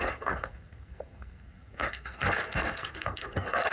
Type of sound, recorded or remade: remade